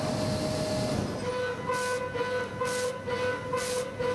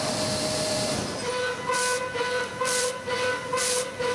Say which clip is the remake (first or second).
second